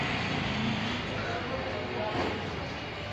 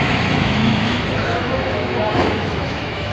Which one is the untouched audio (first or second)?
first